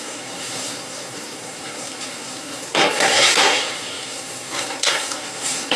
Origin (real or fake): fake